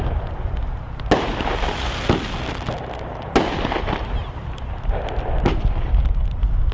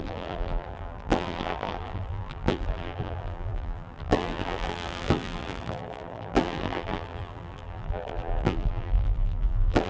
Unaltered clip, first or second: first